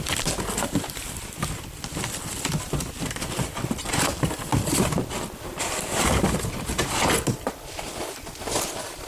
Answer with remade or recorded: recorded